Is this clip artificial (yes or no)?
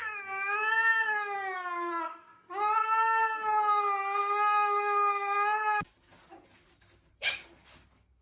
yes